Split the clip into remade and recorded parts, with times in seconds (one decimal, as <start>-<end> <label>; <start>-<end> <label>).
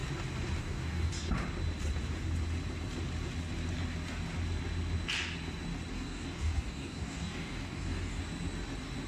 0.0-0.6 recorded; 0.6-1.1 remade; 1.1-5.9 recorded; 5.9-8.2 remade; 8.2-9.1 recorded